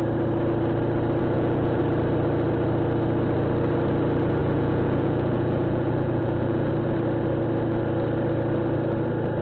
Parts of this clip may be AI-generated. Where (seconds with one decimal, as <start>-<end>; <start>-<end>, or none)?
1.2-1.8; 4.4-6.7